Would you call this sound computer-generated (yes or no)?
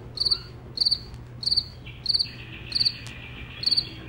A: no